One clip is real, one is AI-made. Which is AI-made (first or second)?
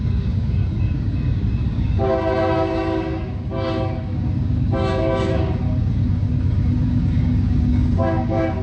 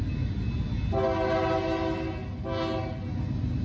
first